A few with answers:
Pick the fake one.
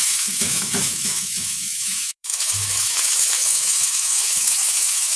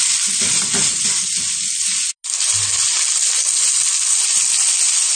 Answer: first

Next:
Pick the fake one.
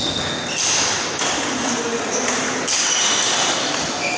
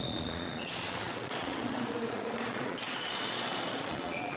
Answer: second